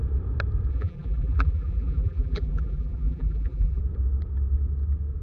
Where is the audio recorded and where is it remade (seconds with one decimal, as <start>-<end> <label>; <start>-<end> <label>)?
0.0-0.7 recorded; 0.7-3.8 remade; 3.8-5.2 recorded